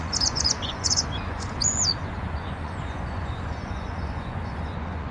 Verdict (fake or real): fake